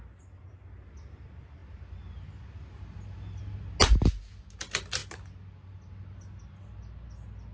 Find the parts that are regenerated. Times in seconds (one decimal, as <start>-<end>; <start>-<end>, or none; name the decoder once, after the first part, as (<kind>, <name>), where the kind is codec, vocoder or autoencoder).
none